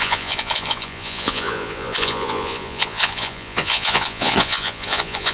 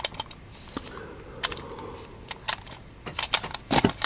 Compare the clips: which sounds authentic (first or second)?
second